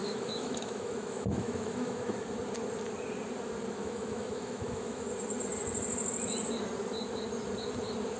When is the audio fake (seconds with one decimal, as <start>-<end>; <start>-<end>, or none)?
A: 0.0-2.2; 3.8-5.1